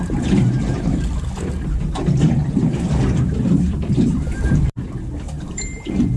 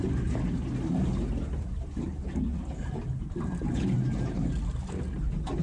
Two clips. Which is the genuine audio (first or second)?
second